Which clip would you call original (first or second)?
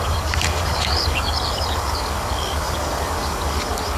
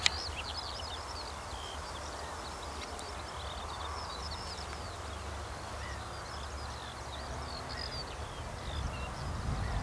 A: second